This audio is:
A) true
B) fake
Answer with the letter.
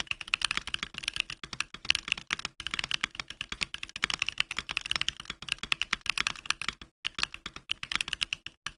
A